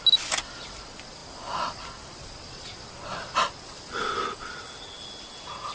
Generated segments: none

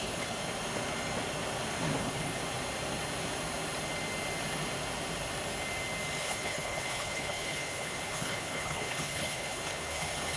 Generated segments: 0.0-0.4 (codec, HILCodec); 2.0-2.4; 6.2-10.4

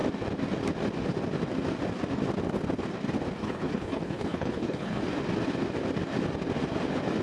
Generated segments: 3.4-5.0 (codec, HILCodec)

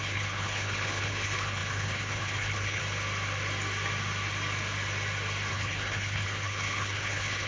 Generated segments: 0.0-2.8 (codec, HILCodec); 5.5-7.5

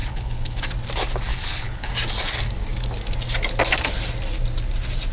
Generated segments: 0.0-0.6 (codec, HILCodec); 1.3-1.9

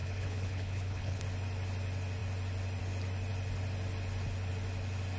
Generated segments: 0.0-1.2 (codec, HILCodec)